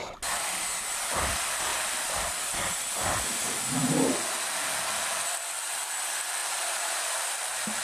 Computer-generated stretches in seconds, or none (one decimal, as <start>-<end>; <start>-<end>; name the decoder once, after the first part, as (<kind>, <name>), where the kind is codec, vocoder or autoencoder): 1.7-2.5 (vocoder, BigVGAN v2); 6.4-7.8

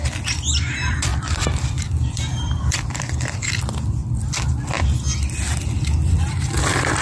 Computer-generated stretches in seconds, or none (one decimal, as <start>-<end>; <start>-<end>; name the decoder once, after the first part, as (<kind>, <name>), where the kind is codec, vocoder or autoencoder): 1.1-3.0 (vocoder, BigVGAN v2)

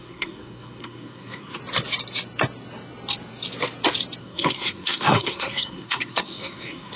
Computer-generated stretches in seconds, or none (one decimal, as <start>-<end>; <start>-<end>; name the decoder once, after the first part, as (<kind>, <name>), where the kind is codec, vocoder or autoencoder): 0.0-1.6 (codec, SNAC); 4.2-7.0

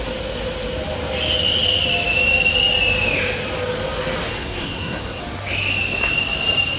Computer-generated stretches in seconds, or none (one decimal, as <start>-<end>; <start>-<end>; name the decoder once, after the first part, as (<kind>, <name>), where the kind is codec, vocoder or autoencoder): 4.3-5.2 (codec, SNAC)

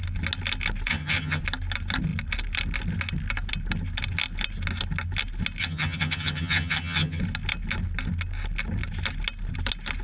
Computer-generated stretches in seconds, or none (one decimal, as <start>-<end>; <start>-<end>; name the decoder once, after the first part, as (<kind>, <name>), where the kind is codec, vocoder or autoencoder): 0.9-1.4 (vocoder, HiFi-GAN); 5.6-7.2

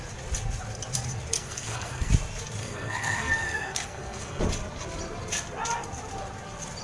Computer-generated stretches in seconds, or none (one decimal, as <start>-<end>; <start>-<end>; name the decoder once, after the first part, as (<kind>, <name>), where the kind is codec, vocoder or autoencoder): 1.3-2.1 (codec, SNAC); 2.6-4.4

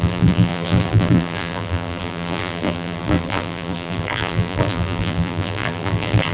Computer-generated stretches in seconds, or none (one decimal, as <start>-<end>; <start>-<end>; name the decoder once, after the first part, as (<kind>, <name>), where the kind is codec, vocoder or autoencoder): 0.0-6.3 (vocoder, BigVGAN v2)

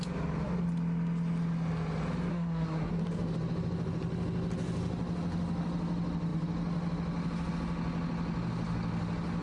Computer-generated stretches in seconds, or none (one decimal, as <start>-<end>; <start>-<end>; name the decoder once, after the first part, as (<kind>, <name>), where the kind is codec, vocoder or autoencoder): 2.3-2.9 (codec, SNAC)